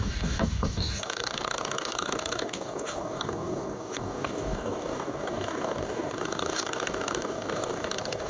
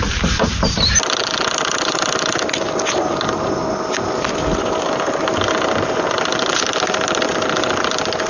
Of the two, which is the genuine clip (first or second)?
second